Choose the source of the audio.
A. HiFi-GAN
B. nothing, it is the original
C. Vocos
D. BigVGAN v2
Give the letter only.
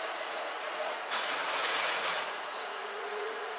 C